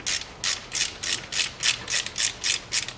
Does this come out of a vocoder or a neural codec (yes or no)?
no